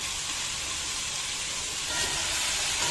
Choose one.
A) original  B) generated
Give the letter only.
A